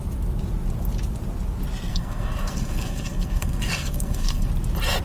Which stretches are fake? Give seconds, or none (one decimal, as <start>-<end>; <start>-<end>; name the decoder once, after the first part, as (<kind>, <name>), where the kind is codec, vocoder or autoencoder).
1.9-4.5 (codec, SNAC)